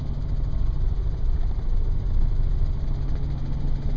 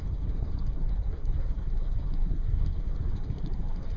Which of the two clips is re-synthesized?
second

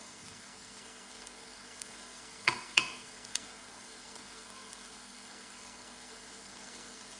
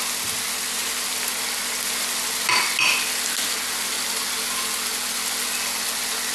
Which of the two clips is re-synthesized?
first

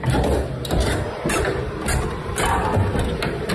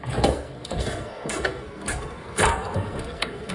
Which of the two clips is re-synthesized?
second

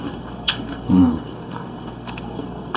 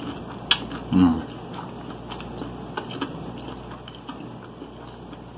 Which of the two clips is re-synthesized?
first